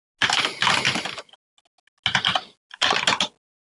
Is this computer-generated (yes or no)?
no